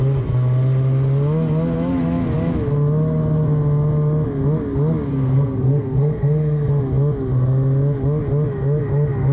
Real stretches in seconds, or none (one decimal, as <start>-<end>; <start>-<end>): 0.0-5.1; 6.7-9.3